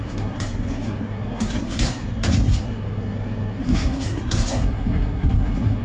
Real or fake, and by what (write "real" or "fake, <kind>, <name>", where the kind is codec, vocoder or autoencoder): fake, codec, SNAC